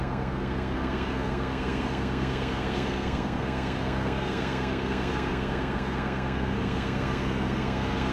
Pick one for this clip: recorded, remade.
remade